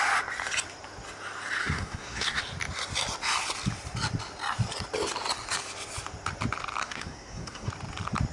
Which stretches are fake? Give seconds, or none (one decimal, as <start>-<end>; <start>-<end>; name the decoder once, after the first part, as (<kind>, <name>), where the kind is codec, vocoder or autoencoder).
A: 1.6-2.4 (codec, SNAC); 6.8-7.7